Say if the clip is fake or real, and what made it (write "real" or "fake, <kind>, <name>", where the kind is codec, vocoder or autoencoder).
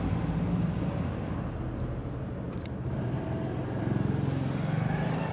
real